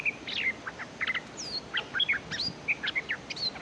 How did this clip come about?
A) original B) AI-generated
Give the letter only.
A